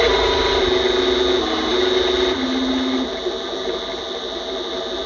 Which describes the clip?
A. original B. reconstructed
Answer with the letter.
A